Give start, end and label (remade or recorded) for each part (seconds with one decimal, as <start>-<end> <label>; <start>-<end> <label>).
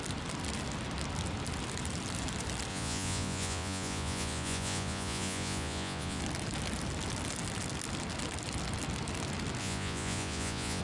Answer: 0.0-2.7 recorded; 2.7-6.2 remade; 6.2-9.6 recorded; 9.6-10.8 remade